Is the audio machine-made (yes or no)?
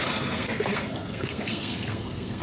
yes